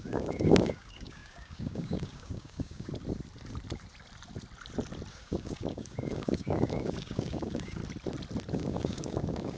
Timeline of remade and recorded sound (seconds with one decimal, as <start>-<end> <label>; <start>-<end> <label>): 0.0-2.9 remade; 2.9-5.1 recorded; 5.1-7.8 remade; 7.8-8.5 recorded; 8.5-9.6 remade